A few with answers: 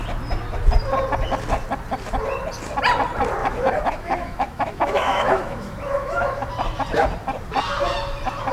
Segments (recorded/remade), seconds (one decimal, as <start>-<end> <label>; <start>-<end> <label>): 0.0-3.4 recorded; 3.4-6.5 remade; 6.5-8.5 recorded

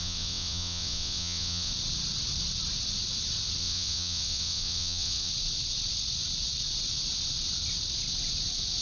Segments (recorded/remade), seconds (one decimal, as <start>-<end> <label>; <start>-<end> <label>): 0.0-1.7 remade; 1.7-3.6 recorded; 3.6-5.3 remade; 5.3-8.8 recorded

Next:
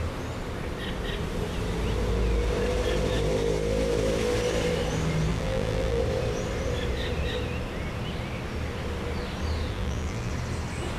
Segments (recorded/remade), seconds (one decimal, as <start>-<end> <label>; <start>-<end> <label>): 0.0-5.3 recorded; 5.3-6.0 remade; 6.0-9.7 recorded; 9.7-10.3 remade; 10.3-11.0 recorded